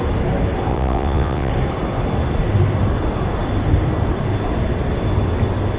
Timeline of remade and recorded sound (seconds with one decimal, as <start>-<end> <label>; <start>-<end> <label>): 0.0-0.7 recorded; 0.7-1.5 remade; 1.5-5.8 recorded